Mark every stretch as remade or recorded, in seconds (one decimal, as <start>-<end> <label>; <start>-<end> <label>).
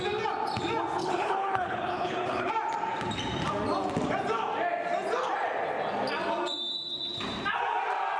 0.0-1.0 recorded; 1.0-2.5 remade; 2.5-8.2 recorded